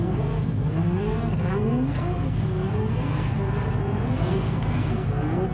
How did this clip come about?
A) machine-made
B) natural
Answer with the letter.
A